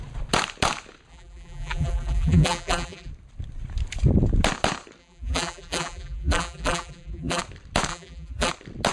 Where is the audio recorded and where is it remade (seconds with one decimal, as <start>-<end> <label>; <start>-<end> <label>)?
0.0-1.1 recorded; 1.1-3.1 remade; 3.1-5.0 recorded; 5.0-7.4 remade; 7.4-7.9 recorded; 7.9-8.5 remade; 8.5-8.9 recorded